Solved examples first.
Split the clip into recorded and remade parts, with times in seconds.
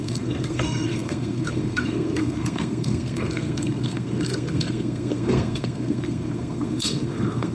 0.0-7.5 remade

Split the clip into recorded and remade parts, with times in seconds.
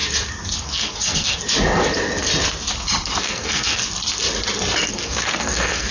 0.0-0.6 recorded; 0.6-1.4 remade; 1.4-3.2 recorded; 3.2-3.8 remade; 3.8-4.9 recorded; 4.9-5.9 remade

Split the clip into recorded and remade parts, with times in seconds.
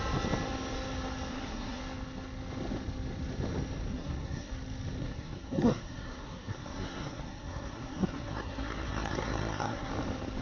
0.0-1.3 recorded; 1.3-1.8 remade; 1.8-3.9 recorded; 3.9-4.5 remade; 4.5-5.0 recorded; 5.0-9.9 remade; 9.9-10.4 recorded